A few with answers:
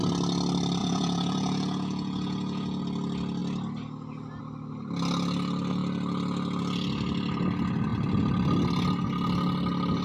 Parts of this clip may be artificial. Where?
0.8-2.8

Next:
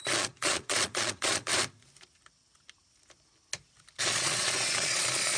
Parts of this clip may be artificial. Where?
0.0-1.5; 4.0-5.4

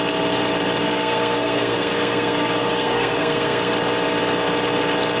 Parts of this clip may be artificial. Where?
0.8-3.7

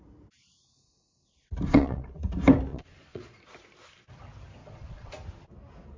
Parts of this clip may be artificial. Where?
1.7-2.2; 2.7-3.4; 4.6-5.1